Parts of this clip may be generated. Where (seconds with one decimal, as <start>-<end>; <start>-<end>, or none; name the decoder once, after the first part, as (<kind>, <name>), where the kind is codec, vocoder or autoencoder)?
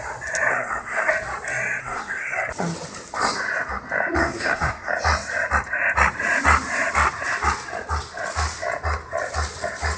0.5-1.1 (codec, SNAC); 1.8-2.5; 4.2-4.9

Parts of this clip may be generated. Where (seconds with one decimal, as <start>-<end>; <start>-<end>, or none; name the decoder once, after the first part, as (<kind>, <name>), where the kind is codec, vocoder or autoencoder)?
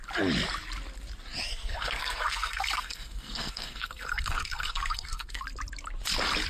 1.5-5.4 (codec, SNAC)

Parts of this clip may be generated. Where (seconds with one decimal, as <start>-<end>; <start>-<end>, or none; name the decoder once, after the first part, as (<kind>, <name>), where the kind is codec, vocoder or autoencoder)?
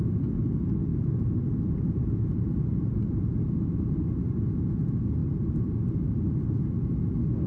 0.9-3.2 (vocoder, BigVGAN v2); 5.2-6.6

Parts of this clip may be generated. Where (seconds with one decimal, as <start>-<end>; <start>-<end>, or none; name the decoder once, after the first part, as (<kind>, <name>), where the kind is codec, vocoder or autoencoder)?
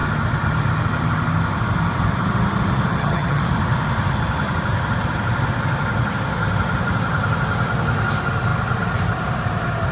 2.9-3.4 (vocoder, HiFi-GAN)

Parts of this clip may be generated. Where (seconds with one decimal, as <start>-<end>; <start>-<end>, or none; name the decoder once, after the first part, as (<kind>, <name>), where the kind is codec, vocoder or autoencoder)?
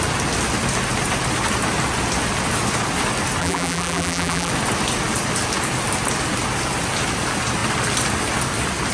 3.4-4.5 (vocoder, BigVGAN v2)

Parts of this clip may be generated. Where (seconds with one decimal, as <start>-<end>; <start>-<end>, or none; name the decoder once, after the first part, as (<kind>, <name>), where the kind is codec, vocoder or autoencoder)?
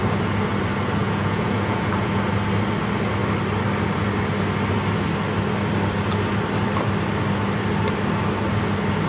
1.0-2.2 (vocoder, Vocos)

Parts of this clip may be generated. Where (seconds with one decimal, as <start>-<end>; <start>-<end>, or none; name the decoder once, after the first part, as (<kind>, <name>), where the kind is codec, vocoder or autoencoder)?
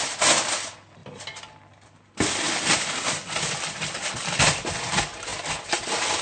none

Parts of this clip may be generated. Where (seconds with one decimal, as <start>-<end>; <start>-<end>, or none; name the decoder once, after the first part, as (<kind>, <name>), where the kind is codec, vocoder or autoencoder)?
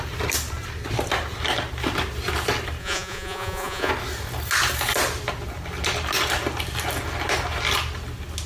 2.8-3.9 (vocoder, Vocos)